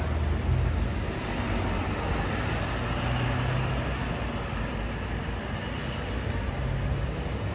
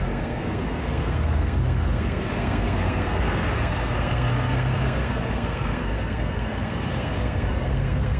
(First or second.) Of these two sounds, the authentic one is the first